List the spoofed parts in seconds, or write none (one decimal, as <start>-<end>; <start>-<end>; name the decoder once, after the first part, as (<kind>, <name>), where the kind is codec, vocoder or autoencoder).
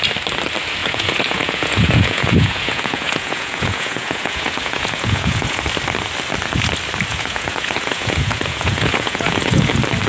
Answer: 0.8-5.6 (vocoder, Vocos); 7.1-9.7